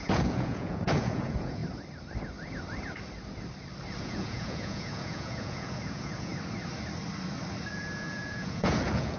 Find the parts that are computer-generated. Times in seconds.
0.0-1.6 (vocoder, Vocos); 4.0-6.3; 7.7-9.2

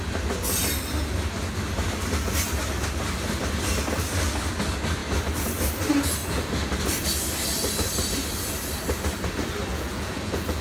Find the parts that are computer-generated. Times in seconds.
9.7-10.6 (vocoder, Vocos)

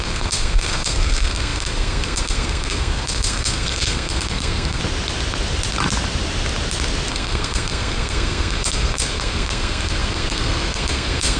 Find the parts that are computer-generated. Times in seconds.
0.0-4.8 (codec, SNAC); 7.1-11.4

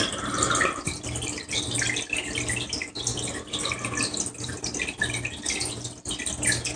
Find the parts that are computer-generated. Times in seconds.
none

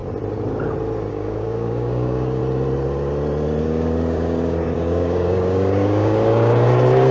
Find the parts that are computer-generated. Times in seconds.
1.1-2.4 (codec, DAC); 3.6-7.1

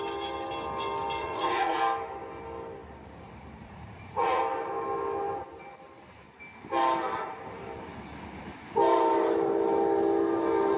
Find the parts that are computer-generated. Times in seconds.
1.2-1.8 (vocoder, Vocos); 3.6-4.4